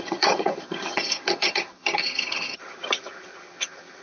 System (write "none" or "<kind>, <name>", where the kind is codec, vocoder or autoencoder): vocoder, HiFi-GAN